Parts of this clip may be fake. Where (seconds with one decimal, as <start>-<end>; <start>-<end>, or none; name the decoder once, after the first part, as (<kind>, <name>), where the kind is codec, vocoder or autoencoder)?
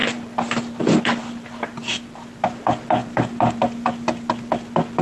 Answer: 0.0-1.2 (vocoder, BigVGAN v2); 1.8-2.6; 3.0-3.6